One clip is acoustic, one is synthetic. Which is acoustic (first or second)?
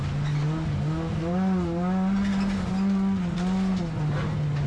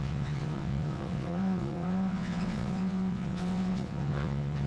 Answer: first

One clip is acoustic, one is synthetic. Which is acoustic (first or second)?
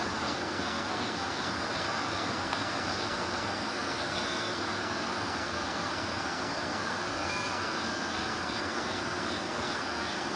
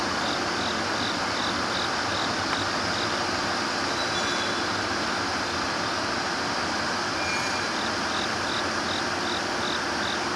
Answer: second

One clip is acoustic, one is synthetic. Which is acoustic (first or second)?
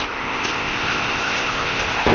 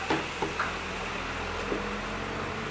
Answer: second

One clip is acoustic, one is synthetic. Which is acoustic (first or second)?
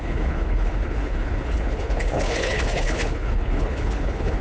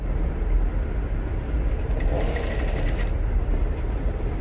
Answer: second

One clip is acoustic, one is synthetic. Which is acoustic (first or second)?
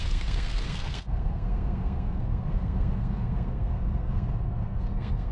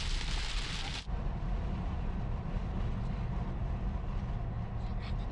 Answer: second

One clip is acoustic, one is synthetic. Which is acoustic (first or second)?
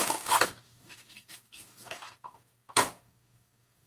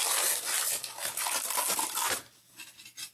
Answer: second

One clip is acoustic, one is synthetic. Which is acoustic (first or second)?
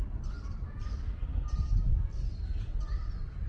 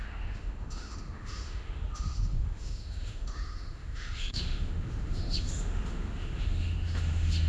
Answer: first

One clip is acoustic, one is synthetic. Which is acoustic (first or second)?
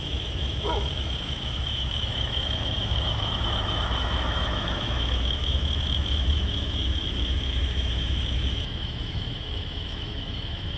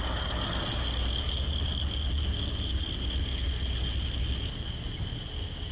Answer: second